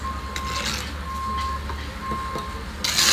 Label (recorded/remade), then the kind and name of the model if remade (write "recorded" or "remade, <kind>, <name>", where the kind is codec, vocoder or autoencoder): recorded